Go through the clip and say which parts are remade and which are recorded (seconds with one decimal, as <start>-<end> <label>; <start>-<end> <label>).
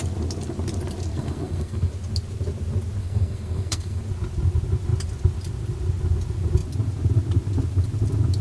0.0-1.1 recorded; 1.1-1.9 remade; 1.9-3.0 recorded; 3.0-4.0 remade; 4.0-8.4 recorded